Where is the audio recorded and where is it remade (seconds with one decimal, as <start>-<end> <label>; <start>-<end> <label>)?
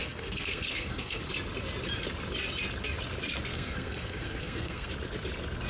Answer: 0.0-1.2 remade; 1.2-3.5 recorded; 3.5-4.9 remade; 4.9-5.7 recorded